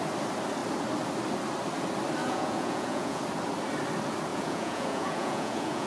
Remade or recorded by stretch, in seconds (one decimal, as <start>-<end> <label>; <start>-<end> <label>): 0.0-2.2 recorded; 2.2-3.2 remade; 3.2-4.3 recorded; 4.3-5.9 remade